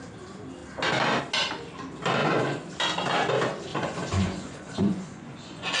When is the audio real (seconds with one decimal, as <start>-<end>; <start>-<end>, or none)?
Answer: 0.0-2.2; 2.7-3.7